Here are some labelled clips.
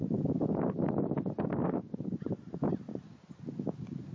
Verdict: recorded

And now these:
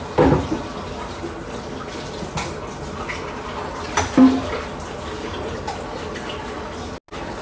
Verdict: recorded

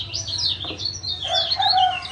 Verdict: recorded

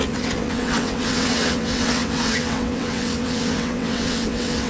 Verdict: remade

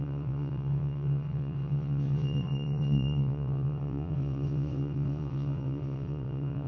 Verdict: remade